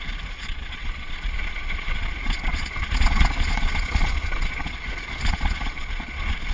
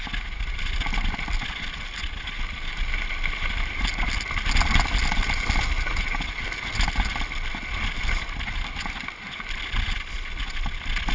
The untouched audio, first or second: second